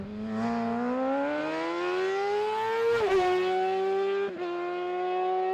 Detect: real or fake real